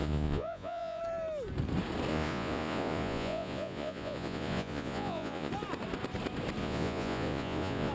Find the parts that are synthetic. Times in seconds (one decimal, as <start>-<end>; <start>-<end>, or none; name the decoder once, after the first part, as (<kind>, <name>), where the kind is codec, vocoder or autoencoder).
0.0-1.0 (vocoder, Vocos); 2.1-5.5; 6.6-7.9